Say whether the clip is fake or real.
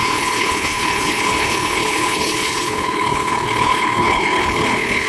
fake